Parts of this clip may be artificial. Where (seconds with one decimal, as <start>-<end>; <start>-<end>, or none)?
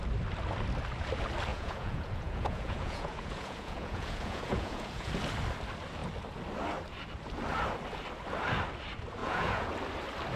1.5-5.1; 9.2-9.7